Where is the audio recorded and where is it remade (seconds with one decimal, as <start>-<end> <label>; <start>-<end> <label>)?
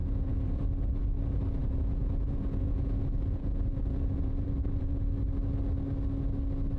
0.0-0.6 remade; 0.6-1.6 recorded; 1.6-5.1 remade; 5.1-6.8 recorded